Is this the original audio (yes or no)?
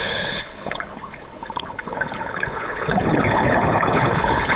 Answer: no